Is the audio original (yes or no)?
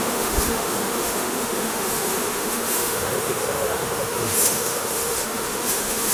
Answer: no